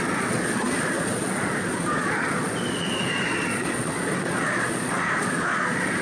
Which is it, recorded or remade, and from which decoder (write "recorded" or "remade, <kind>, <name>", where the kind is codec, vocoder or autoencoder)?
remade, vocoder, Vocos